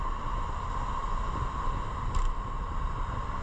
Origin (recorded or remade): recorded